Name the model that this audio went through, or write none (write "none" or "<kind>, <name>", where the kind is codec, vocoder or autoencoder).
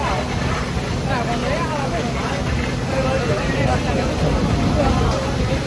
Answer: none